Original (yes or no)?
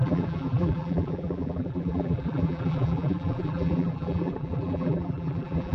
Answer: no